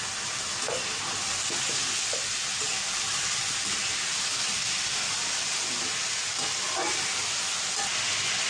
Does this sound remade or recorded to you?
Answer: recorded